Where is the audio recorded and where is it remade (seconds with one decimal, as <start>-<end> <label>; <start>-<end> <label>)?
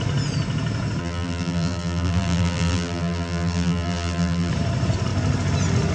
0.0-1.0 recorded; 1.0-4.5 remade; 4.5-5.9 recorded